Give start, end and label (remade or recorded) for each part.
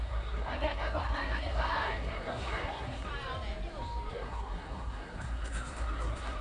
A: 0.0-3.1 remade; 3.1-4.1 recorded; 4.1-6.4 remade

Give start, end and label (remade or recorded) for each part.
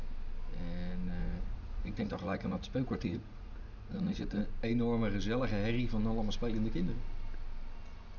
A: 0.0-1.2 recorded; 1.2-4.4 remade; 4.4-8.2 recorded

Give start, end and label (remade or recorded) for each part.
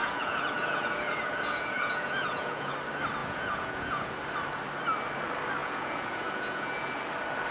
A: 0.0-2.7 remade; 2.7-3.2 recorded; 3.2-4.1 remade; 4.1-5.6 recorded; 5.6-7.0 remade; 7.0-7.5 recorded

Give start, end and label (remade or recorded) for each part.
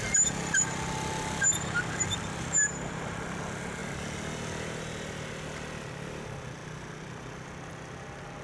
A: 0.0-8.4 recorded